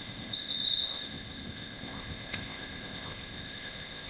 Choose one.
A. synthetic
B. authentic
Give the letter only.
A